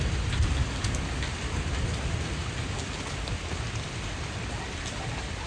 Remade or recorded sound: recorded